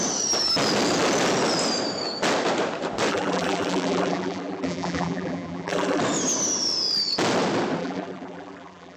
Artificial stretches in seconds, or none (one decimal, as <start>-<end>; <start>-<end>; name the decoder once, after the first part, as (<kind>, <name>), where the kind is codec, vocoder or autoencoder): 3.1-6.0 (vocoder, BigVGAN v2); 7.8-9.0